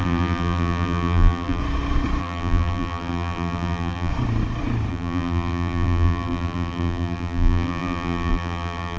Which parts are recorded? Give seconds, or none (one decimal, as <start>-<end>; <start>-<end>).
1.6-2.2; 4.1-4.9